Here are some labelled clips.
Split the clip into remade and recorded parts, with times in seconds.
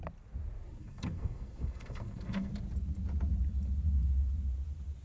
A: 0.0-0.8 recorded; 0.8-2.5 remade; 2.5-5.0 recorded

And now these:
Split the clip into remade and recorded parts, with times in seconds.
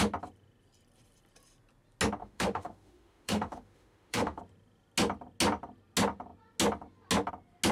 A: 0.0-2.2 recorded; 2.2-4.4 remade; 4.4-7.7 recorded